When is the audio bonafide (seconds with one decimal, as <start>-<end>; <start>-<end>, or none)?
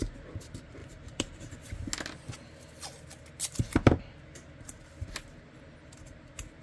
0.0-0.8; 1.6-6.6